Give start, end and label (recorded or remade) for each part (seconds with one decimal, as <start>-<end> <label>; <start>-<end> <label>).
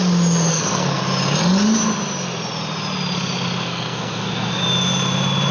0.0-0.5 recorded; 0.5-1.0 remade; 1.0-3.6 recorded; 3.6-4.6 remade; 4.6-5.5 recorded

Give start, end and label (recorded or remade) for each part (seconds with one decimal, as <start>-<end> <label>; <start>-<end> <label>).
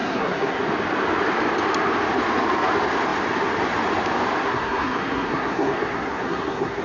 0.0-0.6 remade; 0.6-4.4 recorded; 4.4-6.8 remade